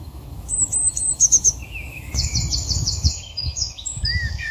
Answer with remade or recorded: remade